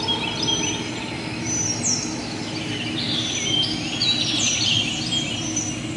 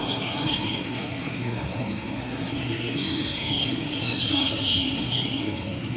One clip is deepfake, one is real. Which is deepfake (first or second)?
second